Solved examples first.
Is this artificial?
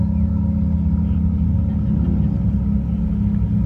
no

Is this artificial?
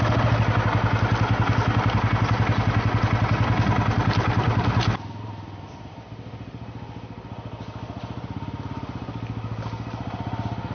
no